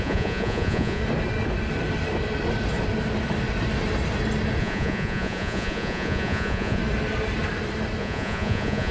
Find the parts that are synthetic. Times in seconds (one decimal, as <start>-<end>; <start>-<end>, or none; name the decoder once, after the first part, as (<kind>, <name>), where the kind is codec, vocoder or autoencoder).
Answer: 0.0-1.0 (vocoder, Vocos); 4.6-6.8; 8.0-8.9